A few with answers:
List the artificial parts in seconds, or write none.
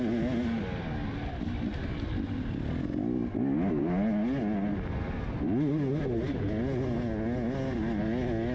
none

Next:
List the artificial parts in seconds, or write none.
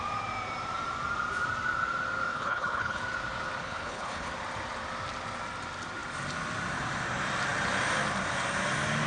2.3-3.0; 3.6-4.3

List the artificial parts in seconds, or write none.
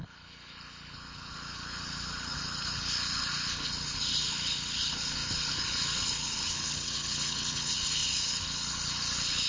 0.0-9.5